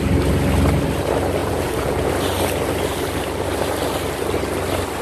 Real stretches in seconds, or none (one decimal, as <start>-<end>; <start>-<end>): 0.0-1.4; 2.1-5.0